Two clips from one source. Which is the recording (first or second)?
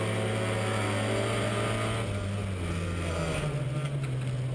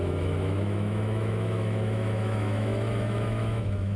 first